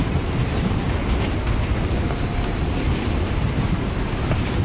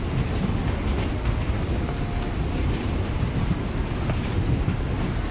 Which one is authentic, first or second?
second